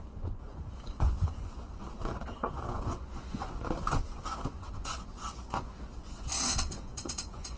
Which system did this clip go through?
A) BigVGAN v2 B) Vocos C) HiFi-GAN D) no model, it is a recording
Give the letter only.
B